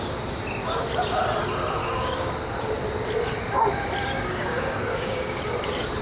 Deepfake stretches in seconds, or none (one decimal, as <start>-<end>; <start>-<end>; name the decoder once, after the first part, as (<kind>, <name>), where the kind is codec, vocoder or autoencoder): 1.8-2.3 (codec, DAC); 4.0-5.4